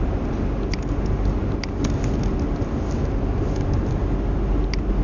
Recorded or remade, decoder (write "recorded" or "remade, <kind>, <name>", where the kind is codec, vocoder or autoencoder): recorded